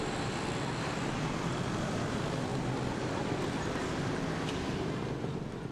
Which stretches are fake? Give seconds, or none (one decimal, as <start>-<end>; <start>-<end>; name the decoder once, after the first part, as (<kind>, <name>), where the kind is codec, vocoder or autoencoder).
none